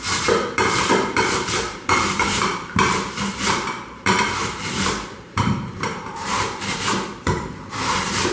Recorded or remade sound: remade